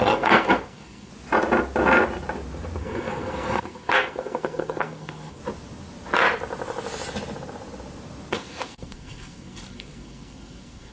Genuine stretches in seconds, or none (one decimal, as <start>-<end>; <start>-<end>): 1.1-2.8; 5.4-8.3